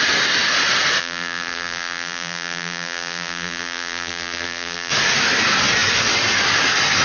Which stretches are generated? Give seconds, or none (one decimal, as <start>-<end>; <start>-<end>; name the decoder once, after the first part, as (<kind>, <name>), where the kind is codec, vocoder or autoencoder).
1.0-4.9 (vocoder, BigVGAN v2)